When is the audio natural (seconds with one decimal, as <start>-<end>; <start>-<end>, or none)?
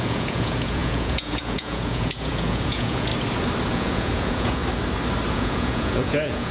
3.1-3.7; 4.6-5.3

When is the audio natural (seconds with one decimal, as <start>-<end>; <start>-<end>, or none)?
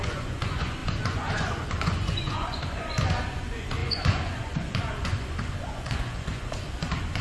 none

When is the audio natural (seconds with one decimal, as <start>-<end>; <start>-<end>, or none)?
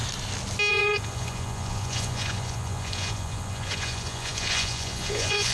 0.0-0.7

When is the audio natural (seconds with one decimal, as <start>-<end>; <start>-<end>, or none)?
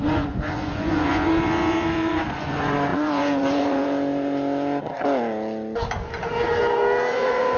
5.0-7.1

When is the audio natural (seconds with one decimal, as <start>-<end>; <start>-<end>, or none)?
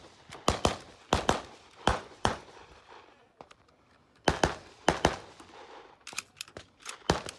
0.0-1.9; 2.7-7.4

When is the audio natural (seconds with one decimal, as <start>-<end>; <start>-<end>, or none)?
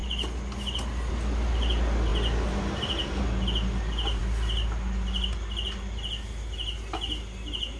0.0-7.8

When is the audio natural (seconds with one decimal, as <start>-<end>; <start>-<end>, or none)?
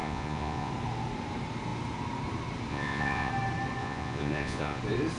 0.7-2.7; 3.3-3.8; 4.8-5.2